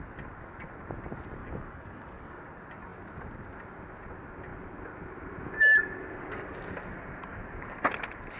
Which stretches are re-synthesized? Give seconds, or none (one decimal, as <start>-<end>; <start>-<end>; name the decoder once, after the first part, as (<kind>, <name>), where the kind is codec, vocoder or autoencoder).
1.4-2.4 (codec, DAC)